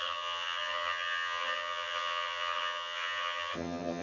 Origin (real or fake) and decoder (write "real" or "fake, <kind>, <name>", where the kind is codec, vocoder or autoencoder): fake, vocoder, HiFi-GAN